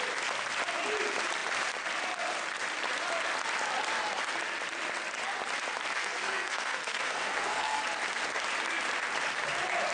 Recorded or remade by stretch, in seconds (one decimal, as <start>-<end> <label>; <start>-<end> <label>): 0.0-6.0 recorded; 6.0-7.8 remade; 7.8-9.9 recorded